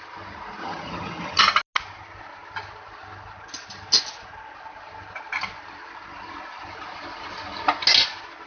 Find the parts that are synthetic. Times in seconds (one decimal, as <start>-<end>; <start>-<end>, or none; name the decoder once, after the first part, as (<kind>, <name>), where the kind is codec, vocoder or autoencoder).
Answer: 0.6-1.4 (vocoder, HiFi-GAN)